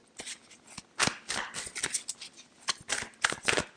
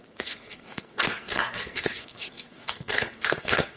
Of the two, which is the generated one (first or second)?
second